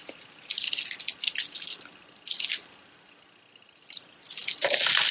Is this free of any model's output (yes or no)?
yes